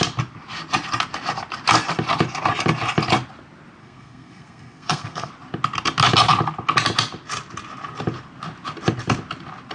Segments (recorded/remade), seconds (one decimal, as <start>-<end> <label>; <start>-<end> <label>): 0.0-3.8 recorded; 3.8-5.3 remade; 5.3-9.7 recorded